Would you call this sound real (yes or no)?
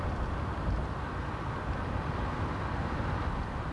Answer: yes